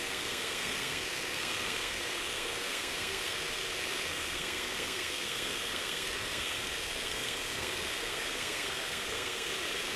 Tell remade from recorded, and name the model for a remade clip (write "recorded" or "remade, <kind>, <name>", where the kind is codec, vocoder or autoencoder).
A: remade, codec, SNAC